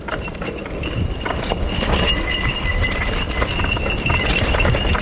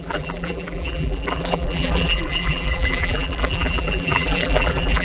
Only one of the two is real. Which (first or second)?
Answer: first